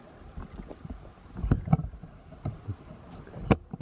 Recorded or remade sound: recorded